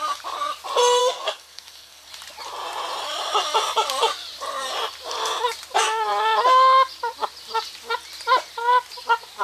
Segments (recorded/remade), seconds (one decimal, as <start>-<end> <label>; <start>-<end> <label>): 0.0-1.0 recorded; 1.0-2.1 remade; 2.1-9.4 recorded

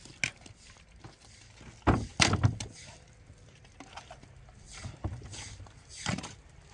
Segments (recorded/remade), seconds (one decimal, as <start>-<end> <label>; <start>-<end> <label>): 0.0-6.7 recorded

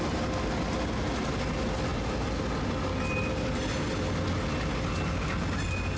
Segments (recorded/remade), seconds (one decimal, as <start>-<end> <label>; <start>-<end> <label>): 0.0-6.0 recorded

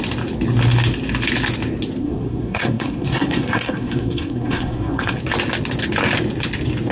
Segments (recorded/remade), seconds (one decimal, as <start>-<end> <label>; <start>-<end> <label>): 0.0-2.0 recorded; 2.0-5.2 remade; 5.2-6.9 recorded

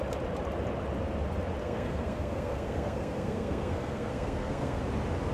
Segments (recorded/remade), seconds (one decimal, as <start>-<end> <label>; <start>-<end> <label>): 0.0-1.6 recorded; 1.6-4.8 remade; 4.8-5.3 recorded

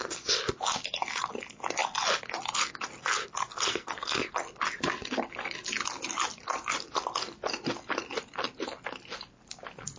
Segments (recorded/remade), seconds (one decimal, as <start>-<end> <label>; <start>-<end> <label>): 0.0-3.7 recorded; 3.7-4.2 remade; 4.2-10.0 recorded

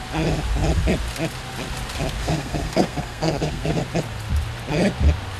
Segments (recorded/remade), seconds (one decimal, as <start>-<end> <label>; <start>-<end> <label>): 0.0-2.2 recorded; 2.2-3.8 remade; 3.8-5.4 recorded

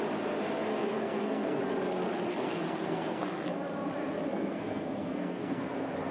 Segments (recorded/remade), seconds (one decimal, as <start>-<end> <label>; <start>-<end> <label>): 0.0-0.7 recorded; 0.7-1.6 remade; 1.6-2.3 recorded; 2.3-3.5 remade; 3.5-4.3 recorded; 4.3-6.1 remade